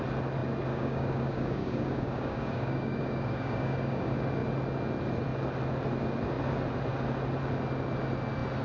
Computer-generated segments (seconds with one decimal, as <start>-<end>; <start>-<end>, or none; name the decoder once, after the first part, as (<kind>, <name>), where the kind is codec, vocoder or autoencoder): 0.7-4.2 (codec, DAC)